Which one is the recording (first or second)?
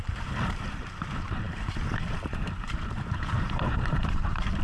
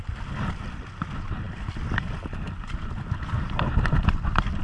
second